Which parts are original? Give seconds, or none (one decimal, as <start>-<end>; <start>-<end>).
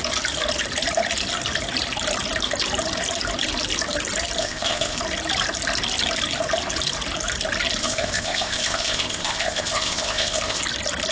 0.0-4.4; 5.0-7.8; 10.6-11.1